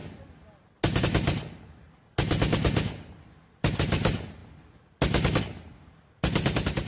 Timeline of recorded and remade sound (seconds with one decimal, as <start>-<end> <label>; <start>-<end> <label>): 0.0-6.9 recorded